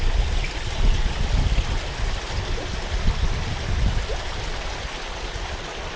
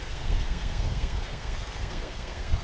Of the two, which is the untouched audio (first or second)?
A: first